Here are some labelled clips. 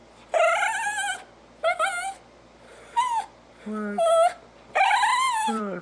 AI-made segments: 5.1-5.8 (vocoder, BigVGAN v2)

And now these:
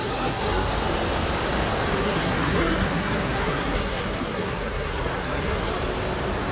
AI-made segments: 0.0-0.7 (codec, SNAC); 2.0-5.7

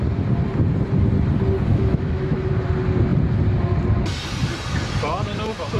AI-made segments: 1.7-2.5 (autoencoder, DAC-VAE)

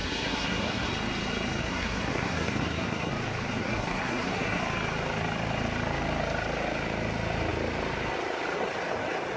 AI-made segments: 0.0-0.9 (codec, SNAC); 1.6-3.1; 3.6-4.6

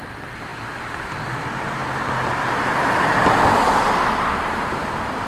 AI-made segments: 0.0-1.8 (vocoder, BigVGAN v2)